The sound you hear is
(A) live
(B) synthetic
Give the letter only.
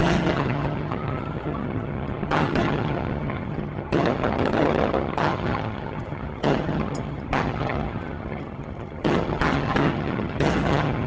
B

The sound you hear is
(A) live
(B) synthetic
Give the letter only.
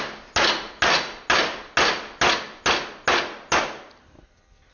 A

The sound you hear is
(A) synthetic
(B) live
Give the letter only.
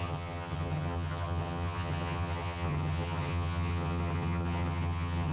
A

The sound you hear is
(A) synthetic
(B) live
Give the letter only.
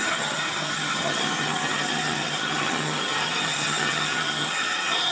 A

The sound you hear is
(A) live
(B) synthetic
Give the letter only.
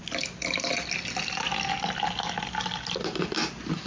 A